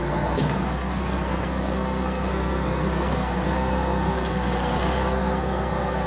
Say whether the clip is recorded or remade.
remade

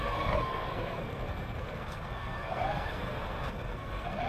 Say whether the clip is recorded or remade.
remade